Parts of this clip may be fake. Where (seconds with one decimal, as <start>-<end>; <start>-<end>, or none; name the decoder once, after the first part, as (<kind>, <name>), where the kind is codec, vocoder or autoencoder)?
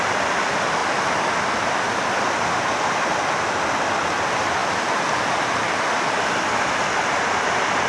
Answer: none